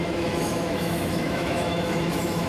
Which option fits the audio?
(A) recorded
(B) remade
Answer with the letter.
B